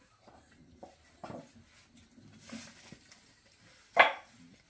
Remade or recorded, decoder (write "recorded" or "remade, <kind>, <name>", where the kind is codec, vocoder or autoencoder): recorded